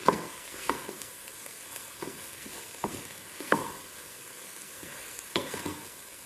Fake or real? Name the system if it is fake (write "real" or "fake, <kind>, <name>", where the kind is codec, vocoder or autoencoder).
fake, codec, SNAC